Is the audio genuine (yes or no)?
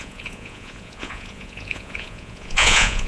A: no